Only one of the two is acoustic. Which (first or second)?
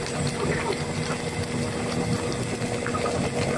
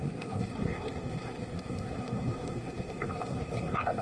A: first